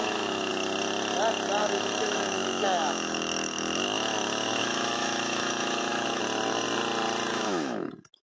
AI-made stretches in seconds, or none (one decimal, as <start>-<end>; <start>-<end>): 0.0-0.5; 1.6-6.2; 7.3-7.9